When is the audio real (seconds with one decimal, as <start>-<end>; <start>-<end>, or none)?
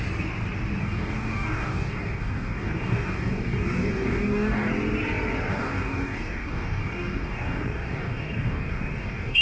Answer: 0.0-0.8; 4.7-5.5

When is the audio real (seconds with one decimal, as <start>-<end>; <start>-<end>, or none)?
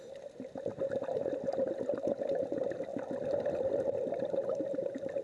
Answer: 0.0-2.9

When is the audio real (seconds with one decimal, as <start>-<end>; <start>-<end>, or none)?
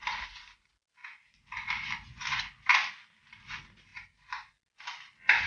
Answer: 0.0-1.0; 1.9-5.5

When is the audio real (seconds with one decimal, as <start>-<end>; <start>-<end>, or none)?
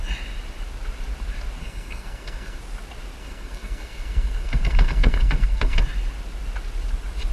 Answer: 0.0-1.6; 2.6-3.2; 5.8-7.3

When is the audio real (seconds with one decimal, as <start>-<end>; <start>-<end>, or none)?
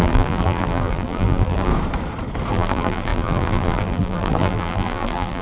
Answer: 1.7-2.5